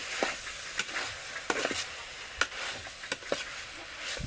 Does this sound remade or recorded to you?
recorded